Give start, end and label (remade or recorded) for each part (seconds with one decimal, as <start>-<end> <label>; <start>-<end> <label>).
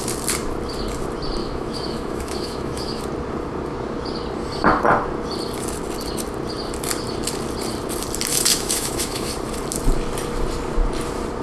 0.0-1.4 recorded; 1.4-3.0 remade; 3.0-8.3 recorded; 8.3-9.3 remade; 9.3-11.4 recorded